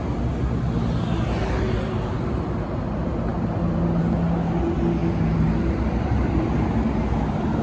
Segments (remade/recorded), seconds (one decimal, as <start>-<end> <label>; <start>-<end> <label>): 0.0-1.4 recorded; 1.4-2.4 remade; 2.4-3.3 recorded; 3.3-4.0 remade; 4.0-5.0 recorded; 5.0-6.7 remade; 6.7-7.6 recorded